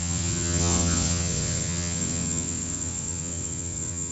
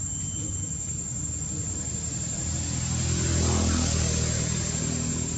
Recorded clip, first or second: second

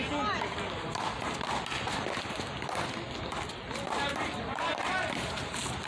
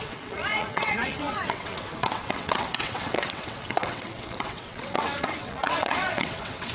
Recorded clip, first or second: first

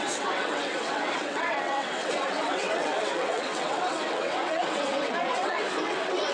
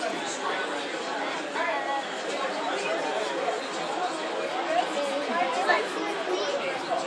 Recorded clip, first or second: second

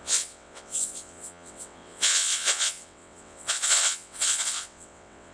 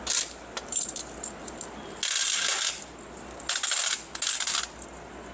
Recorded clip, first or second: second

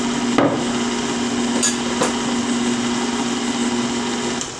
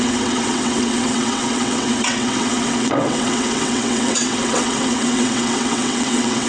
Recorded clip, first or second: first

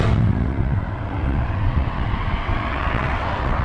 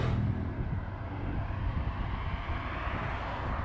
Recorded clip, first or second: second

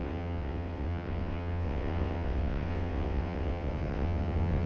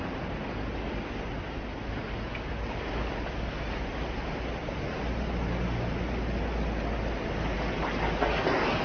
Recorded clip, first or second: second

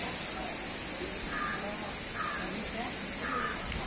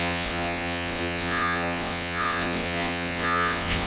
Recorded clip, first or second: first